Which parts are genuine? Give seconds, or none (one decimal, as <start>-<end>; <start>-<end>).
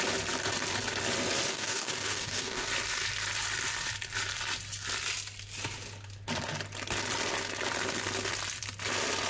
0.0-1.5; 2.7-9.3